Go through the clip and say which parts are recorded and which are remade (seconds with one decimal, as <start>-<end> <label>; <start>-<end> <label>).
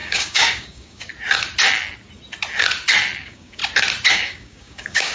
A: 0.0-1.1 remade; 1.1-3.2 recorded; 3.2-3.6 remade; 3.6-4.1 recorded; 4.1-5.1 remade